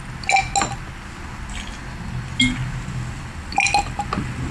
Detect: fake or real real